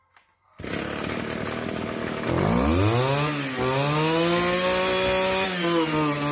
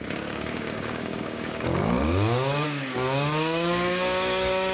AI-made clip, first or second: second